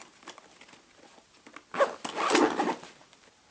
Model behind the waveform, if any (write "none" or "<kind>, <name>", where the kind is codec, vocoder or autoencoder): none